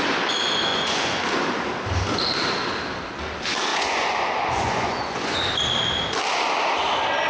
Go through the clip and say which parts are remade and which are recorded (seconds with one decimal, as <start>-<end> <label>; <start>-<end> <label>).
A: 0.0-0.7 recorded; 0.7-1.3 remade; 1.3-3.7 recorded; 3.7-5.4 remade; 5.4-7.3 recorded